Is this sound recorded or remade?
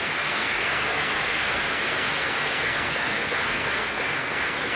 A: remade